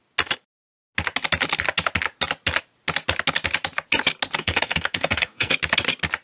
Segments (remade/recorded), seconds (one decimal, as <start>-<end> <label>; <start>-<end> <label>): 0.0-4.4 recorded; 4.4-5.5 remade; 5.5-6.2 recorded